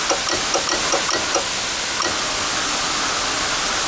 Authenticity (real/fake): real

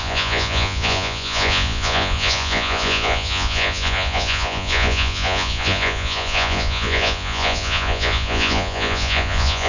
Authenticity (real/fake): fake